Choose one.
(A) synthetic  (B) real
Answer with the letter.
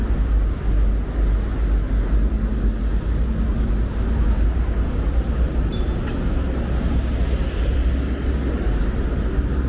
B